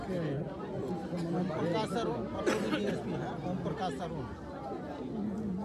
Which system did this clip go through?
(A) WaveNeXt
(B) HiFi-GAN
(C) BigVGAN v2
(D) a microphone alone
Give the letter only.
D